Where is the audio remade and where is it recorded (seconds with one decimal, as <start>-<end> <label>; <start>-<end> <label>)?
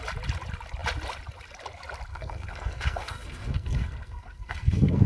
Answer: 0.0-2.1 recorded; 2.1-5.1 remade